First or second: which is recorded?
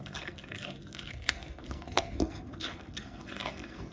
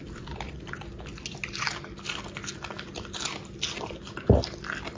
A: second